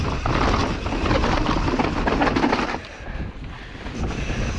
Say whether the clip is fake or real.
real